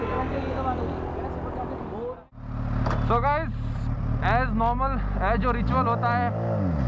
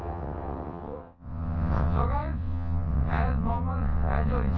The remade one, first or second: second